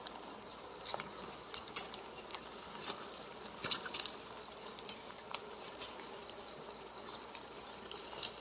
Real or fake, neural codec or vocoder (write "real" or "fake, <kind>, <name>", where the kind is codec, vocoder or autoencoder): real